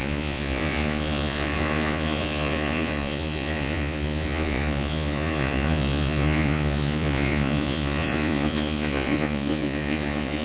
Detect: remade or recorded remade